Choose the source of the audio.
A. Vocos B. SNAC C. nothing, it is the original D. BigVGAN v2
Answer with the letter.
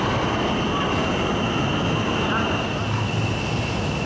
C